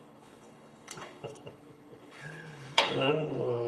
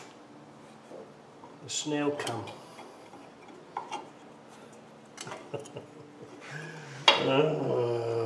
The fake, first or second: first